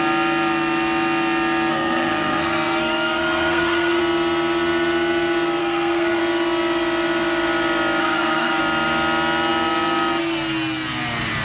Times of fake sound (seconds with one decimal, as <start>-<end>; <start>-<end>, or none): 1.7-4.0; 5.6-6.2; 8.0-8.6